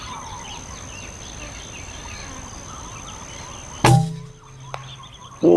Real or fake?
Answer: real